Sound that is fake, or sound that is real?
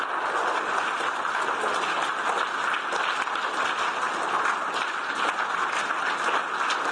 real